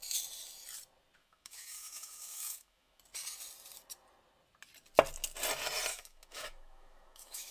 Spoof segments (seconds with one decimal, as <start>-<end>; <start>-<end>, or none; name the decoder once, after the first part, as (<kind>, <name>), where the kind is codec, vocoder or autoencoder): 1.2-3.0 (autoencoder, DAC-VAE); 5.9-7.5